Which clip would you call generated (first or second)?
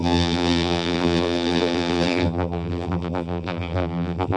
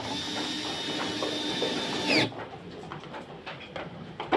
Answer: first